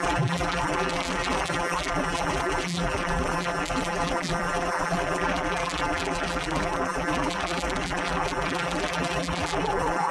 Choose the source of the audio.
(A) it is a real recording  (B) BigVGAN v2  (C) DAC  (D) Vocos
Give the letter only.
B